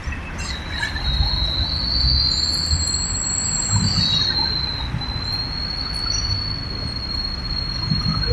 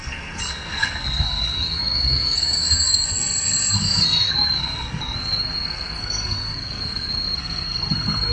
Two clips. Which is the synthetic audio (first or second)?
second